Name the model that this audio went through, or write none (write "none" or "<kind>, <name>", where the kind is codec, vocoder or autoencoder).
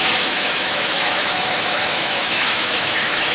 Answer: autoencoder, DAC-VAE